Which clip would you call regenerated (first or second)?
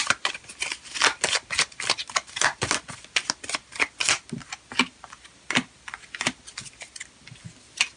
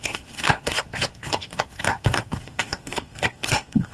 second